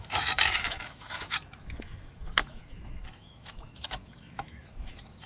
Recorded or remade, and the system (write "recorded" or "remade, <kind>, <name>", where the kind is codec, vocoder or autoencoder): remade, autoencoder, DAC-VAE